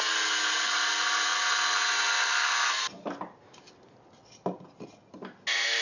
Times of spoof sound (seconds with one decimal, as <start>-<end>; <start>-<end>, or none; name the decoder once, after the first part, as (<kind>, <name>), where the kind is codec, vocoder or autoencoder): none

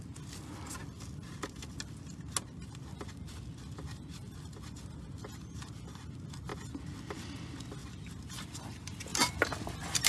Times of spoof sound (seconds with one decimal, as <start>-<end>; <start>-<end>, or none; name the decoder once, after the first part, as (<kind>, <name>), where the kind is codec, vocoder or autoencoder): 9.1-10.1 (vocoder, BigVGAN v2)

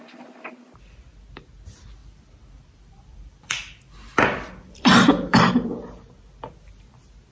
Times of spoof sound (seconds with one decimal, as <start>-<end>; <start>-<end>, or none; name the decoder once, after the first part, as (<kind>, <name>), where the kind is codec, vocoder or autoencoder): 2.0-5.5 (vocoder, BigVGAN v2)

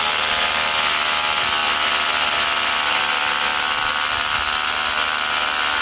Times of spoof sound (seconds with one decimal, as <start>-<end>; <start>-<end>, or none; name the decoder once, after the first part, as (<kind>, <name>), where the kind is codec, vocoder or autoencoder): 1.6-3.0 (vocoder, BigVGAN v2); 3.5-4.2

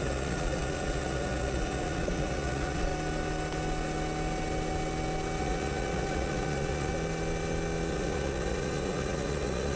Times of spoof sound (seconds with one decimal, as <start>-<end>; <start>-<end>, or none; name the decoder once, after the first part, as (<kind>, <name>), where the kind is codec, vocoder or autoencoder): 0.0-2.9 (vocoder, Vocos); 5.4-6.9; 7.9-9.8

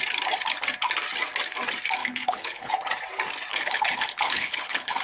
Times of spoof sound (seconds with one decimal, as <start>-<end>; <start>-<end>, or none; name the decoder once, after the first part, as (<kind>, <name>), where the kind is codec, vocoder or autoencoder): 2.0-2.7 (codec, HILCodec); 3.5-5.0